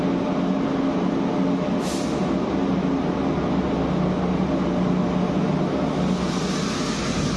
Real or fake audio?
real